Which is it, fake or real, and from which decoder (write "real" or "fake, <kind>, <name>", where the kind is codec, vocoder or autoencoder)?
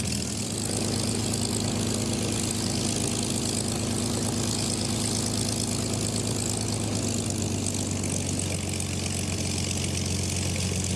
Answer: real